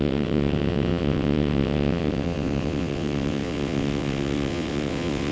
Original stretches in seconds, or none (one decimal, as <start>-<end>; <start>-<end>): none